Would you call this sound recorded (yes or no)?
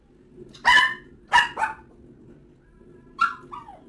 yes